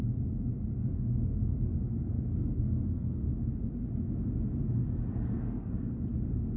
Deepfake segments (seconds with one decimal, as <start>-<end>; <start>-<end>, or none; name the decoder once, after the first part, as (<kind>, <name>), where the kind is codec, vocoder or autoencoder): 0.7-1.4 (codec, SNAC); 1.9-3.3; 5.3-6.0